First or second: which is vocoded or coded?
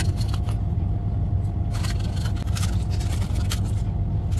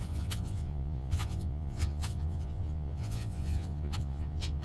second